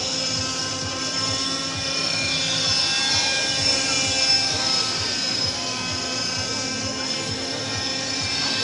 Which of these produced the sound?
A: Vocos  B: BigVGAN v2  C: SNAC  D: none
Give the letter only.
D